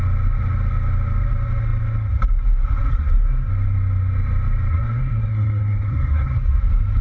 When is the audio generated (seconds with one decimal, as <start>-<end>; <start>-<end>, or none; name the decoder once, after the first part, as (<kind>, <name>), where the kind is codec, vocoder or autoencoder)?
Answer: 2.9-3.5 (codec, SNAC); 4.7-6.6